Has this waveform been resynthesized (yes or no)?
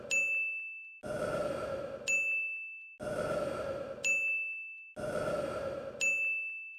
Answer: no